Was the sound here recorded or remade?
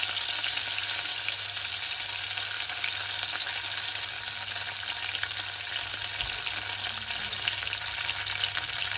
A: recorded